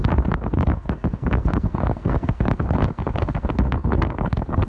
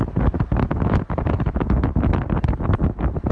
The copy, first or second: first